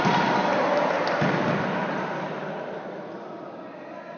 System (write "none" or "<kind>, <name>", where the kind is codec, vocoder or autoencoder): none